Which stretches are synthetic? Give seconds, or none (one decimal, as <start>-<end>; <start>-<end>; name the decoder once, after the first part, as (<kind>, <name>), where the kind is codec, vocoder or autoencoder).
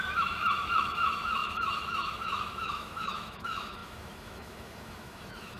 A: 0.0-5.6 (autoencoder, DAC-VAE)